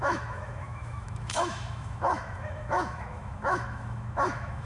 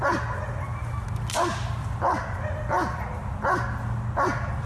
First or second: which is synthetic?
first